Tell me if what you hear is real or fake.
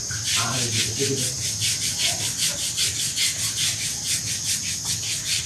real